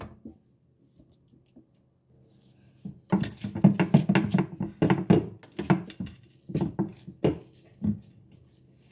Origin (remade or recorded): recorded